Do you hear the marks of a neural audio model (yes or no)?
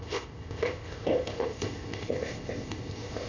yes